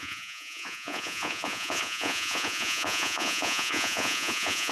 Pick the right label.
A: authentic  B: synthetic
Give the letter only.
B